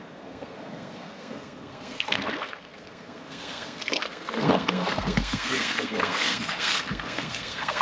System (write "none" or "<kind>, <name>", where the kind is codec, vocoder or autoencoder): codec, SNAC